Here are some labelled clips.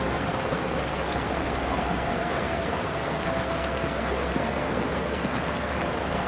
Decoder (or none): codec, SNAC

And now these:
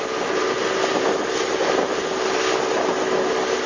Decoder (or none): none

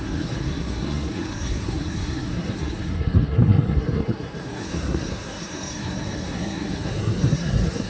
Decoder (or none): codec, SNAC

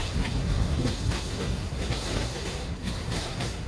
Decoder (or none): codec, SNAC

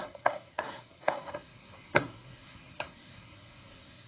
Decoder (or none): codec, SNAC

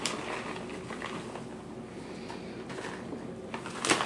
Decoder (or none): none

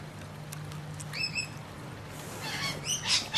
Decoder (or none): none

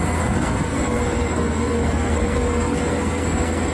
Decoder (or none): codec, SNAC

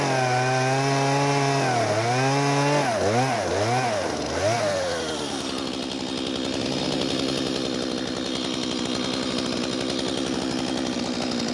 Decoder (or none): none